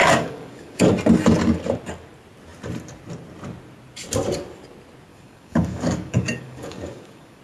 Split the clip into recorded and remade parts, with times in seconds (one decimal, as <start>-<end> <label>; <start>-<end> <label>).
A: 0.0-0.9 remade; 0.9-5.1 recorded; 5.1-7.4 remade

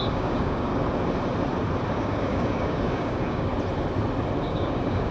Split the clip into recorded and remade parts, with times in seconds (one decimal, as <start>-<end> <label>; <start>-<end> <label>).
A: 0.0-0.7 remade; 0.7-1.9 recorded; 1.9-3.5 remade; 3.5-4.4 recorded; 4.4-5.1 remade

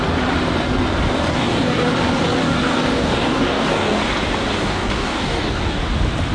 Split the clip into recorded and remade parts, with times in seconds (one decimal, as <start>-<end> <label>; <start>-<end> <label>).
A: 0.0-1.3 recorded; 1.3-1.9 remade; 1.9-2.4 recorded; 2.4-4.0 remade; 4.0-4.5 recorded; 4.5-5.8 remade; 5.8-6.3 recorded

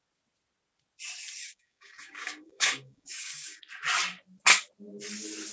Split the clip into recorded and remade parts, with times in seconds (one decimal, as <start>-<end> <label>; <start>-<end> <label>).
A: 0.0-1.4 recorded; 1.4-3.6 remade; 3.6-5.5 recorded

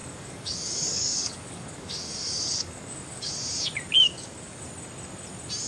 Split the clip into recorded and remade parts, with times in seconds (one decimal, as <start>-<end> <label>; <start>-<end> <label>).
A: 0.0-3.3 remade; 3.3-4.0 recorded; 4.0-4.6 remade; 4.6-5.7 recorded